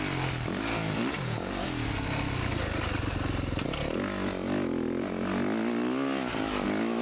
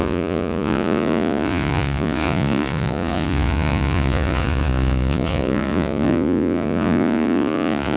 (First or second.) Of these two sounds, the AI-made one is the second